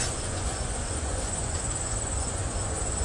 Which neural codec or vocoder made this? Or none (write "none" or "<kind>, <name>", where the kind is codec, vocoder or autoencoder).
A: vocoder, Vocos